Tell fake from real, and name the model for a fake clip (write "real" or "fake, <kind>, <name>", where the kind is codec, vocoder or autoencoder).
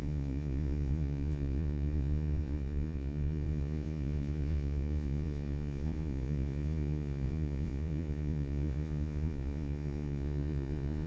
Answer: fake, vocoder, Vocos